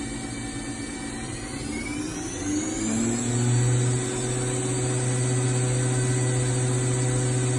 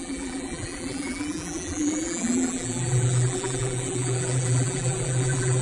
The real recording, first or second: first